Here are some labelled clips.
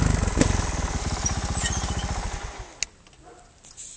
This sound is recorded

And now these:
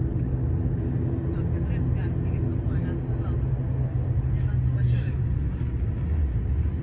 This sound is recorded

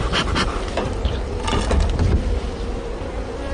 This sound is remade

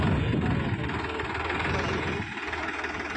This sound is recorded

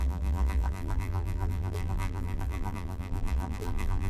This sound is remade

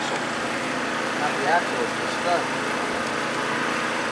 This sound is remade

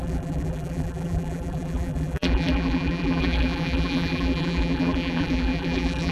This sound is remade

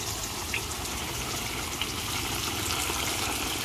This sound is recorded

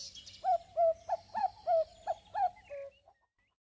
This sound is recorded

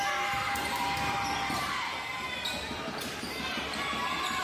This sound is remade